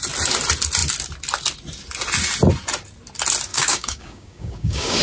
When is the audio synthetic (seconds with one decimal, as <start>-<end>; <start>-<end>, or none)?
3.5-5.0